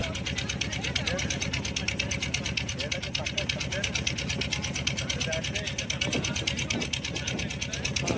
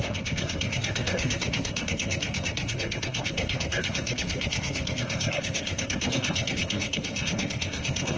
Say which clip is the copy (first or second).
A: second